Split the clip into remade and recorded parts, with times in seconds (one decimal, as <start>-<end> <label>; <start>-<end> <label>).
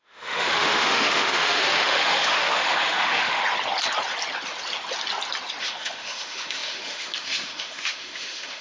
0.0-3.4 remade; 3.4-5.6 recorded; 5.6-8.6 remade